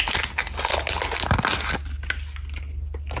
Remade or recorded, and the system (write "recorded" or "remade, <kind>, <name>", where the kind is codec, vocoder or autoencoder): recorded